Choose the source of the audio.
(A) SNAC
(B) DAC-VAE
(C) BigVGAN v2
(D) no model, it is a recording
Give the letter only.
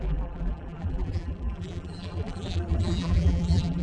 C